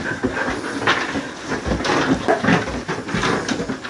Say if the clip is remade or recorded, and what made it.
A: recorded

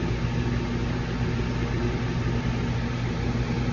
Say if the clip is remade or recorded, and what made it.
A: recorded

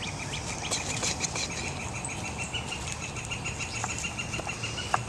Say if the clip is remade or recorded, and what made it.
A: recorded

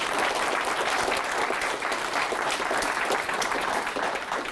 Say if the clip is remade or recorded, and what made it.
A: remade, vocoder, BigVGAN v2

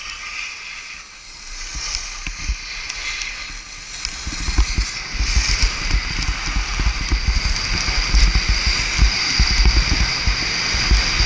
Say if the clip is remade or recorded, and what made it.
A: recorded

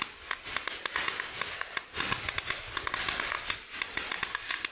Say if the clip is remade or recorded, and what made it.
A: recorded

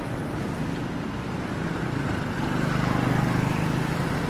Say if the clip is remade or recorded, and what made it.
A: recorded